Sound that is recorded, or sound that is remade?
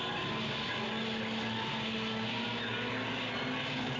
recorded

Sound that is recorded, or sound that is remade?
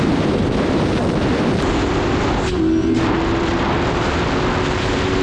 recorded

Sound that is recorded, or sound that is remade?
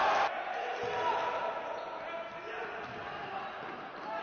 recorded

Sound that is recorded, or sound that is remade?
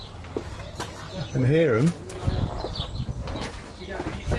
recorded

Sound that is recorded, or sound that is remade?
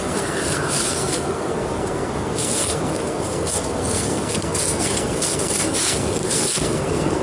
remade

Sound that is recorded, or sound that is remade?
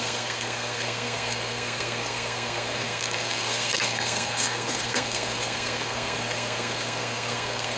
remade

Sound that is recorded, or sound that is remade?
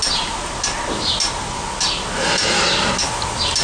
recorded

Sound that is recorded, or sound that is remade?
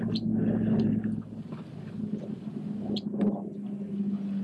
recorded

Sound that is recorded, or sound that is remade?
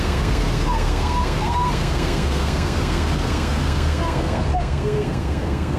remade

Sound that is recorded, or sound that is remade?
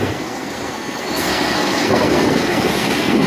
remade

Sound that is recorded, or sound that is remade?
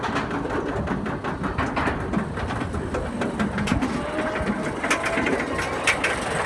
recorded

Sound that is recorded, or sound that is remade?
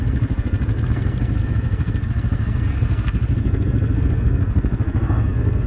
remade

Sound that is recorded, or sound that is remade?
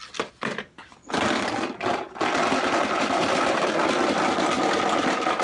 recorded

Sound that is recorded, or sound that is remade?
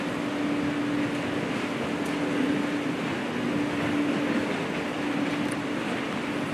recorded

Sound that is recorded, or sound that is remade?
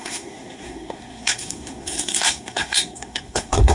remade